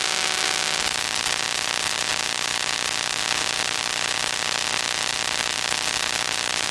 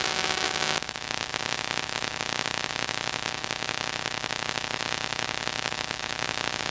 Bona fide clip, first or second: first